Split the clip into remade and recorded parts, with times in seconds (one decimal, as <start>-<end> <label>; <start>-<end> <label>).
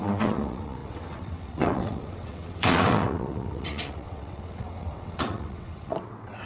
0.0-6.5 remade